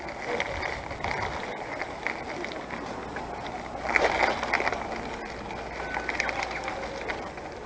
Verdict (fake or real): real